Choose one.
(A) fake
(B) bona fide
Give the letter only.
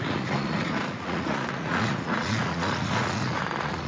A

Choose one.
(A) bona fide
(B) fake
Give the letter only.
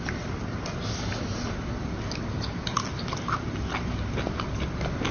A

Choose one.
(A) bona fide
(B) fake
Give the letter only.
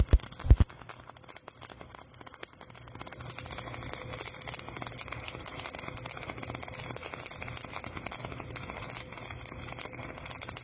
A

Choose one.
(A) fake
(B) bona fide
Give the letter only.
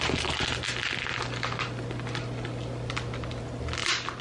B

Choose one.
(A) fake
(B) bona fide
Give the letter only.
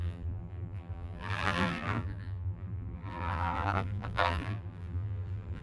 A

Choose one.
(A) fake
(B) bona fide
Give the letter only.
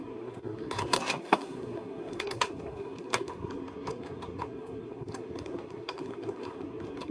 A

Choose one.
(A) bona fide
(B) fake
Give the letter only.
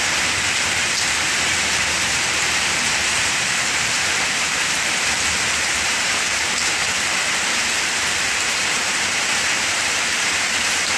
B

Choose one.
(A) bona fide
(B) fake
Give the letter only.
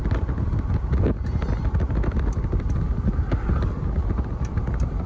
A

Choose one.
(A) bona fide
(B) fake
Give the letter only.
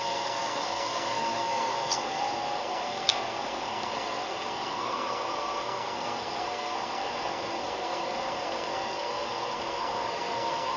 B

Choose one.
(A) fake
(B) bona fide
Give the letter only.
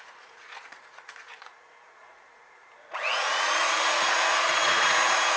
A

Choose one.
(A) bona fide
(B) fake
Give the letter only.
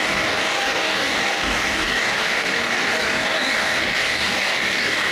B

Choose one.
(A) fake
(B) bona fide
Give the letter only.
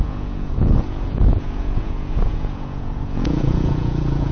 A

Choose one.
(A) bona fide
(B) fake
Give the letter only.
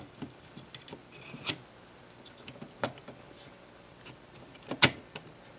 A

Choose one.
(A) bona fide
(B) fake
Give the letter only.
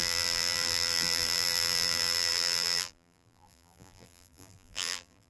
B